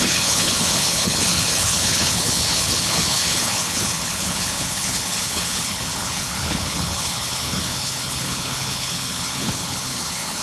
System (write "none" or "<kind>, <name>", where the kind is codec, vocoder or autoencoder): codec, HILCodec